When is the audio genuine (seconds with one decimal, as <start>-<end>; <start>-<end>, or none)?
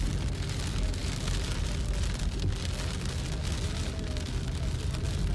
0.0-5.3